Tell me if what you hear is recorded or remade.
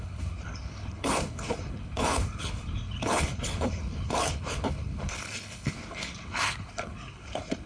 remade